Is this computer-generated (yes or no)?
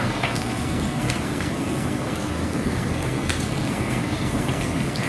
yes